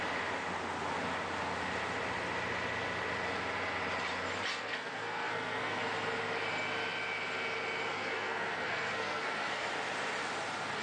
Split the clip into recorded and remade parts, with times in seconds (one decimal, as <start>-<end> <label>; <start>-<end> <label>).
0.0-4.5 recorded; 4.5-5.8 remade; 5.8-7.9 recorded; 7.9-9.7 remade; 9.7-10.8 recorded